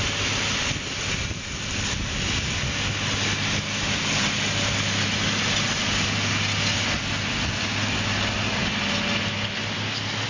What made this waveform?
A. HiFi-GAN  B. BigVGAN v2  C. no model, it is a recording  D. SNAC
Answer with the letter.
C